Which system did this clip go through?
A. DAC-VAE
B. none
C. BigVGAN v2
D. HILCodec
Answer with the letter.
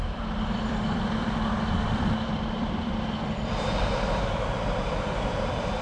C